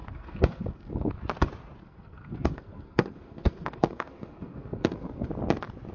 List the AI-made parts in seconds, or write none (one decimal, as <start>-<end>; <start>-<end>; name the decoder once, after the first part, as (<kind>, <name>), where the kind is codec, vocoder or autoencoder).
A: 0.0-1.2 (codec, SNAC); 1.8-5.3